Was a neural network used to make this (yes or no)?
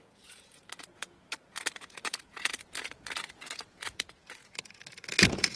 yes